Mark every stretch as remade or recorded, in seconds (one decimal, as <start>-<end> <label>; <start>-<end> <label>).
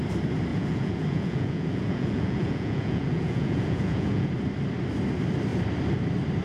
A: 0.0-0.5 recorded; 0.5-4.3 remade; 4.3-6.4 recorded